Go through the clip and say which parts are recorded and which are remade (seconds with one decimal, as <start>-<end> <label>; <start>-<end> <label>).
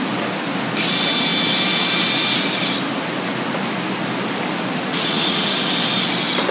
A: 0.0-4.9 recorded; 4.9-5.5 remade; 5.5-6.5 recorded